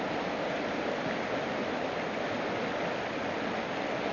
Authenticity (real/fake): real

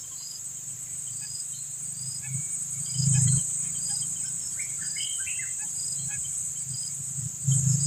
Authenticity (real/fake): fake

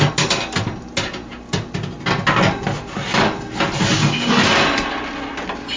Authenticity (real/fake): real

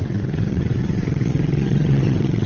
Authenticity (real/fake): fake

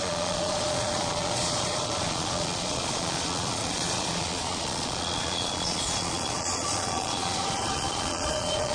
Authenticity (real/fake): fake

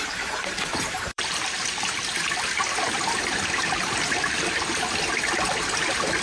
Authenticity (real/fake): fake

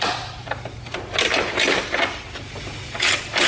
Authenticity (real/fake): fake